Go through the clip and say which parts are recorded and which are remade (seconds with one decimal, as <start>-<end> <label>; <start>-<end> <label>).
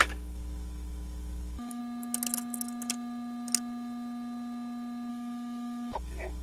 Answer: 0.0-1.8 remade; 1.8-5.1 recorded; 5.1-6.4 remade